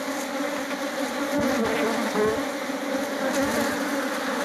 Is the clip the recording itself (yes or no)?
yes